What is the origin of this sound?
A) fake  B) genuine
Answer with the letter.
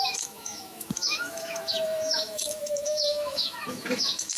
A